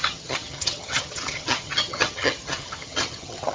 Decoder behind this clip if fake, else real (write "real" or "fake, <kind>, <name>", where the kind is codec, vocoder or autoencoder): fake, vocoder, HiFi-GAN